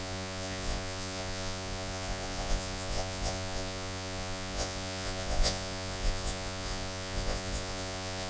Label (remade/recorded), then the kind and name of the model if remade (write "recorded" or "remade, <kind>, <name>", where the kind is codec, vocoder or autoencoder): remade, vocoder, Vocos